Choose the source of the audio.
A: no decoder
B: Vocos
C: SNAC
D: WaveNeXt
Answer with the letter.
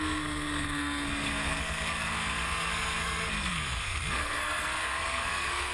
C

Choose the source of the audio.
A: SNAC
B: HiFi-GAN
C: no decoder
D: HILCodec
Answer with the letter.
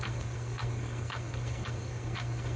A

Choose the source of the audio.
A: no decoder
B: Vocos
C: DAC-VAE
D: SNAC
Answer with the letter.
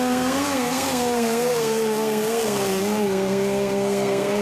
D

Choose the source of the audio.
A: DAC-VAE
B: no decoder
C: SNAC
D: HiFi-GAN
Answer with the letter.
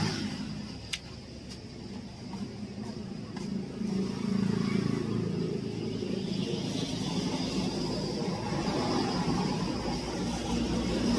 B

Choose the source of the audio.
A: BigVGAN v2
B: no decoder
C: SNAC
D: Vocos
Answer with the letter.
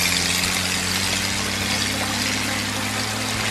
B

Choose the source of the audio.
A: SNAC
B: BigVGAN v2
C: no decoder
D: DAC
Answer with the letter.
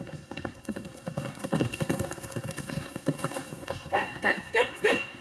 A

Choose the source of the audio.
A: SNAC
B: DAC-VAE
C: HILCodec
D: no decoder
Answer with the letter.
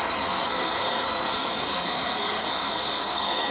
A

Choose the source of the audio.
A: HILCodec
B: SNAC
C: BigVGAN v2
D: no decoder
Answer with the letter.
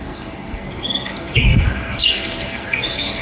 B